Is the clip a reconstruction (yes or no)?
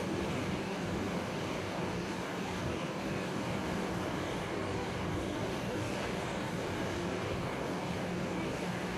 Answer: yes